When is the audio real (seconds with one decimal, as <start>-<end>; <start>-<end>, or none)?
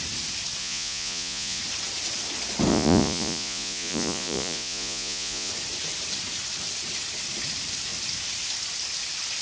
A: 0.0-0.6; 1.6-2.7; 5.5-9.4